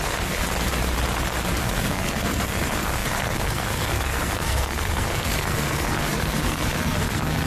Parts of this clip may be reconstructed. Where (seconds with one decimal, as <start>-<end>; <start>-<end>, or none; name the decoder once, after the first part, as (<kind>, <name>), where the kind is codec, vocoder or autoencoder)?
0.0-0.4 (codec, SNAC); 1.6-7.5